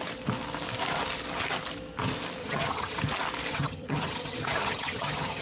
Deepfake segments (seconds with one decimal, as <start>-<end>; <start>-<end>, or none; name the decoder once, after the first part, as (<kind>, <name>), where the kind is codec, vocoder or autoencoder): 2.4-3.0 (vocoder, HiFi-GAN); 3.5-5.4